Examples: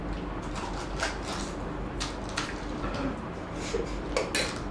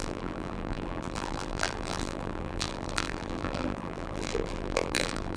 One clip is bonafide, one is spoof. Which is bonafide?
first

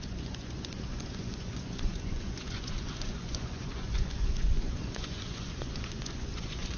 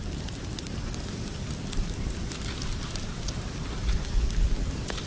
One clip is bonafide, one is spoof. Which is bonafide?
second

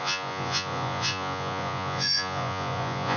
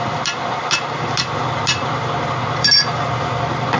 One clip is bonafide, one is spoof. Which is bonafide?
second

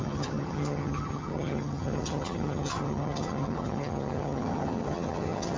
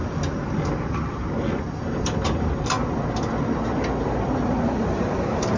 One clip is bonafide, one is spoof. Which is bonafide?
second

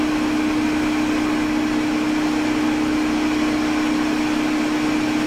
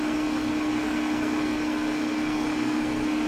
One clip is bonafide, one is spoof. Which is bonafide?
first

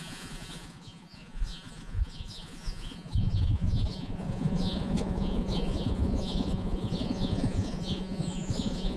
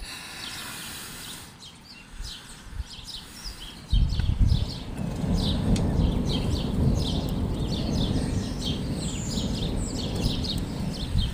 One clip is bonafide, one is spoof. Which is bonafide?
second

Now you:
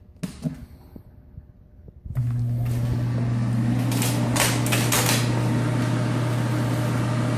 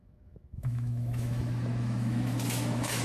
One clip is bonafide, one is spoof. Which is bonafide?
first